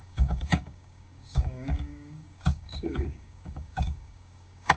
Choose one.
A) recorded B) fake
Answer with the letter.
B